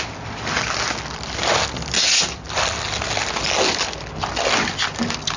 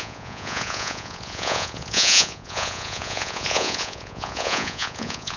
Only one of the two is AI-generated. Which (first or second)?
second